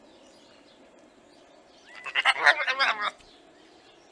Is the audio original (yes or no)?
yes